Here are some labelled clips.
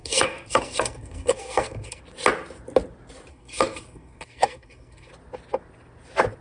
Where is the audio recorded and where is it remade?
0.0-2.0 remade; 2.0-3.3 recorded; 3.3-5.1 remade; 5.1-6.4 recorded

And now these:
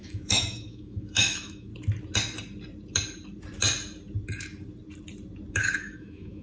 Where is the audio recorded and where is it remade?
0.0-1.7 remade; 1.7-5.5 recorded; 5.5-6.4 remade